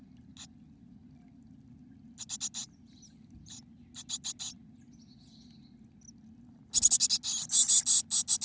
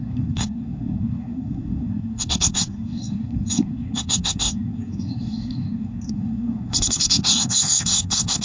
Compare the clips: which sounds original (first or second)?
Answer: first